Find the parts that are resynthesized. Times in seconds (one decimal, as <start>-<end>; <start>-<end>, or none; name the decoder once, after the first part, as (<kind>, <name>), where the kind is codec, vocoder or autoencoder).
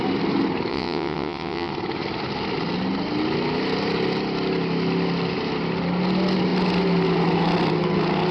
0.7-1.7 (vocoder, WaveNeXt)